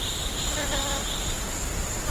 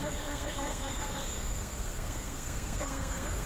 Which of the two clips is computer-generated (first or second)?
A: second